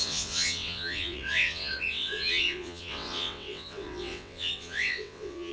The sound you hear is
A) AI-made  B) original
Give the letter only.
A